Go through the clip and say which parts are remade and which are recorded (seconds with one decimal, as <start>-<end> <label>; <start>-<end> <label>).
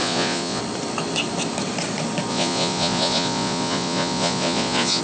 0.0-0.6 remade; 0.6-2.3 recorded; 2.3-5.0 remade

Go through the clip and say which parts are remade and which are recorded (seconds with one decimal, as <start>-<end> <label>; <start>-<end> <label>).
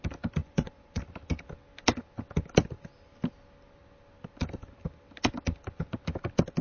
0.0-0.4 recorded; 0.4-1.0 remade; 1.0-6.6 recorded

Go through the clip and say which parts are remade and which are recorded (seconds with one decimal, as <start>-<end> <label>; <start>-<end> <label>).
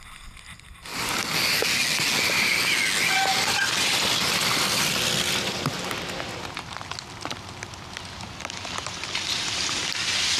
0.0-10.4 recorded